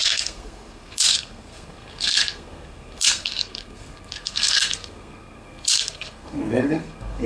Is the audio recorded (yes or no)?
no